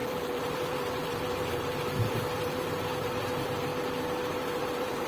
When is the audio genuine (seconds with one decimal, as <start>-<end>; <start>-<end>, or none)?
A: 3.7-4.3